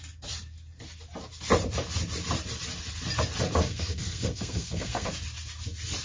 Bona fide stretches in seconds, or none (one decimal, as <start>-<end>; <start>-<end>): 0.0-3.6; 5.1-6.0